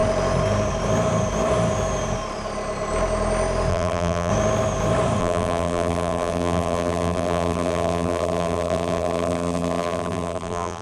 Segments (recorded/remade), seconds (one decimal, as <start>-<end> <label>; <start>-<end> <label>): 0.0-3.7 recorded; 3.7-4.3 remade; 4.3-5.2 recorded; 5.2-10.8 remade